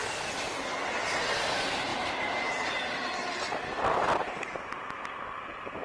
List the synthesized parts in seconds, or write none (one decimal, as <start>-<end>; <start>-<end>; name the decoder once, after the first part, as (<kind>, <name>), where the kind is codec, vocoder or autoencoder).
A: none